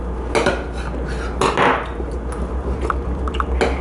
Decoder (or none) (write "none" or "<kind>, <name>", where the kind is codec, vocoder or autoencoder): none